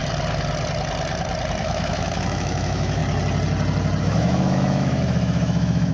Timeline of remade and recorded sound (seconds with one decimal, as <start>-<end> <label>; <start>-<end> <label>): 0.0-1.6 recorded; 1.6-3.0 remade; 3.0-4.0 recorded; 4.0-5.9 remade